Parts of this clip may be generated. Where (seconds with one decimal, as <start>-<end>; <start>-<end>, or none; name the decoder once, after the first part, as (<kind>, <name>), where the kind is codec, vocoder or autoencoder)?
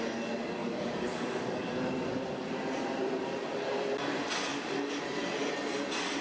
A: 0.6-1.7 (codec, DAC); 4.5-5.0